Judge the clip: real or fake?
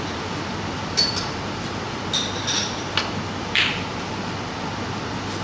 real